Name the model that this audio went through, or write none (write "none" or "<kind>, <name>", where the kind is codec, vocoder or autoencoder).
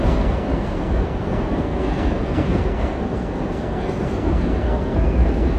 codec, SNAC